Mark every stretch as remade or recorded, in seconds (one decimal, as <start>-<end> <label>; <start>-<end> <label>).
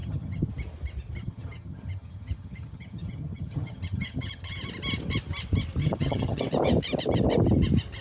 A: 0.0-0.5 remade; 0.5-1.2 recorded; 1.2-4.6 remade; 4.6-5.8 recorded; 5.8-6.4 remade; 6.4-8.0 recorded